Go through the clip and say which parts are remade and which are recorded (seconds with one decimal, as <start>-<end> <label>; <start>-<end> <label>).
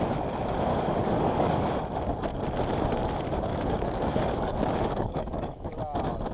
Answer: 0.0-0.7 recorded; 0.7-1.7 remade; 1.7-3.5 recorded; 3.5-5.7 remade; 5.7-6.3 recorded